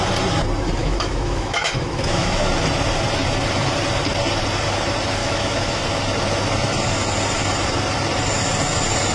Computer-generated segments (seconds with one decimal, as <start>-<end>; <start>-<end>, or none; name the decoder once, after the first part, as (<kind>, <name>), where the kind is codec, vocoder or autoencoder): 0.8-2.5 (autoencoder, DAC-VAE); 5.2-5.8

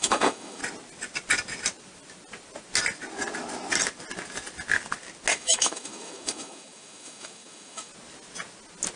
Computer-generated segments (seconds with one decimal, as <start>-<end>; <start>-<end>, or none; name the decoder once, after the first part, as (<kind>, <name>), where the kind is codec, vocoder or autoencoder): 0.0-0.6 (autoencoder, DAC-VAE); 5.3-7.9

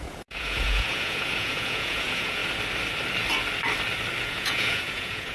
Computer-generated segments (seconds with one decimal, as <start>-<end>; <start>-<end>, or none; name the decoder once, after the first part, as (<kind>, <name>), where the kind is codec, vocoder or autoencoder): 0.0-2.4 (vocoder, Vocos); 4.2-5.3